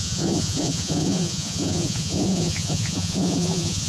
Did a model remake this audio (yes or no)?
yes